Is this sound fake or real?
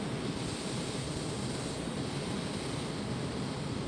real